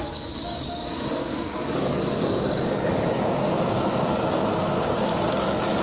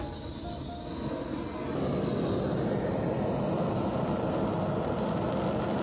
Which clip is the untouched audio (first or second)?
second